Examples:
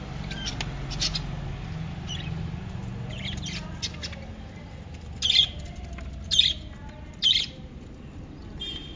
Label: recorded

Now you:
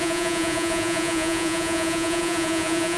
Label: remade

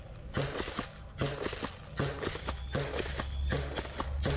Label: recorded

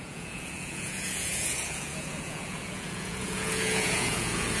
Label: remade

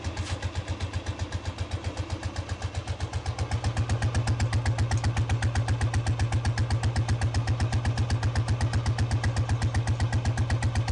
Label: recorded